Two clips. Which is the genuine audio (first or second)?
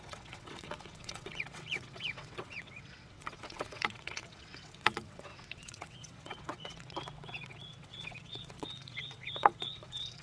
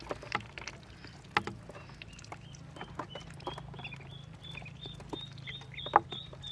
second